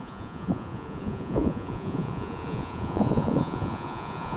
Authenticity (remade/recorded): remade